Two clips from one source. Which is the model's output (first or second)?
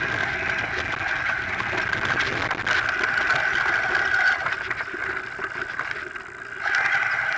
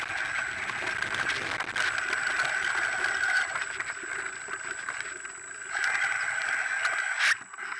second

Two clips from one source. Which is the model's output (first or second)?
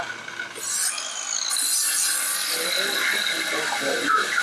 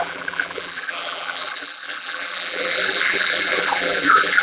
second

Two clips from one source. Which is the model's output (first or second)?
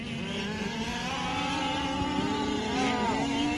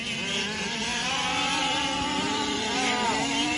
second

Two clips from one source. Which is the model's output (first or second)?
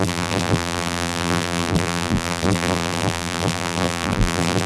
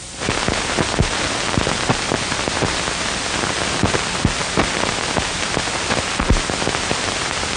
first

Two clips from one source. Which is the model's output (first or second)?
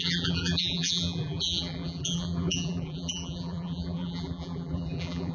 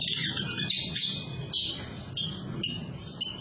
first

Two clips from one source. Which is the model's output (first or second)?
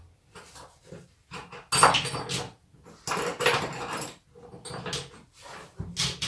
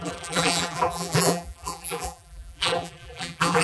second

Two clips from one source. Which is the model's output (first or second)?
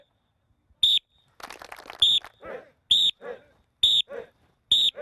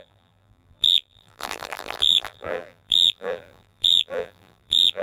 second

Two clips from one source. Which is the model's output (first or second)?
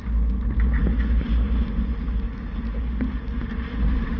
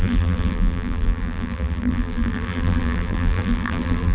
second